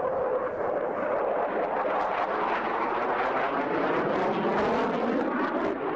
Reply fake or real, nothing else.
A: real